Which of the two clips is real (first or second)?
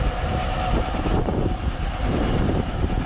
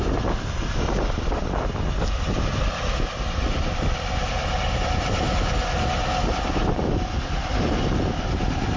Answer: second